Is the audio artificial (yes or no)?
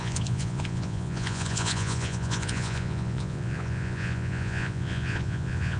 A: yes